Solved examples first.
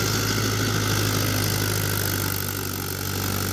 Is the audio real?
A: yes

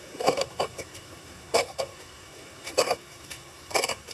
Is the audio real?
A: no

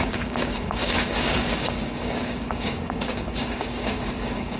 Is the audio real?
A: no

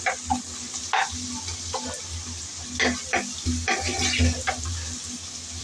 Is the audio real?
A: yes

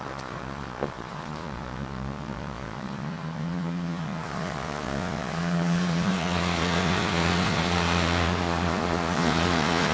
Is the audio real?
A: no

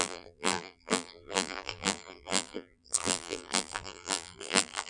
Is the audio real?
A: no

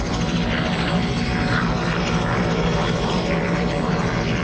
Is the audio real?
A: yes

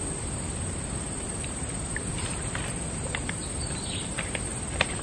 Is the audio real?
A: yes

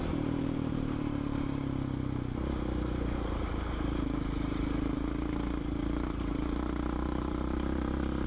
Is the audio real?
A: no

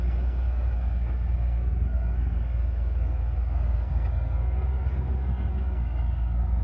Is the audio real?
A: no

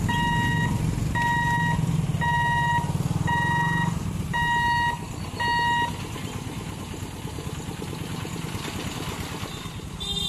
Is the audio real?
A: yes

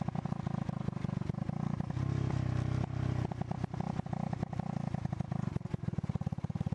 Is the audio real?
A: yes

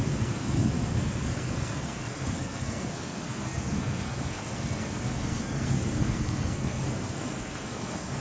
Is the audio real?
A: no